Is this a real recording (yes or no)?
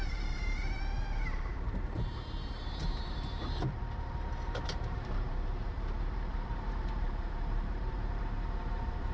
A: no